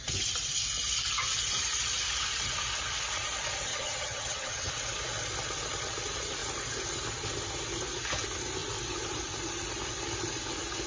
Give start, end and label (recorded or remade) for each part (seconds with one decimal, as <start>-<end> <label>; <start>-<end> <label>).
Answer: 0.0-3.7 recorded; 3.7-4.7 remade; 4.7-10.9 recorded